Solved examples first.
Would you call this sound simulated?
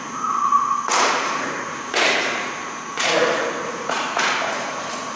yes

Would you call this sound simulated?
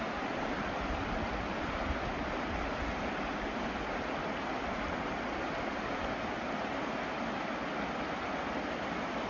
no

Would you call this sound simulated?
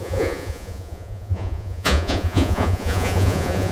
yes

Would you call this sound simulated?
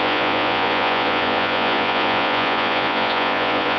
yes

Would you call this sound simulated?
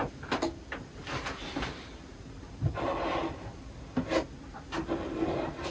no